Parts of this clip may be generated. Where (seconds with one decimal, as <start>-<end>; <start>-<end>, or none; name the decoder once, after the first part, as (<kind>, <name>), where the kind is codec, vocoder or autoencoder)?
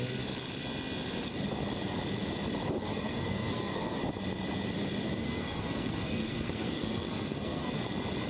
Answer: 2.9-4.0 (codec, SNAC); 5.2-7.7